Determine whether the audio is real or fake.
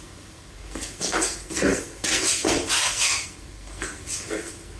fake